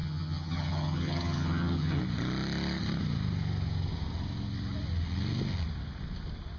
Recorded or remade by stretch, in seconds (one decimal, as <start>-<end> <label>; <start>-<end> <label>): 0.0-2.0 remade; 2.0-6.6 recorded